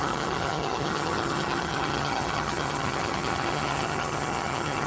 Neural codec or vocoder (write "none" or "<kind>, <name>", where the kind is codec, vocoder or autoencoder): vocoder, HiFi-GAN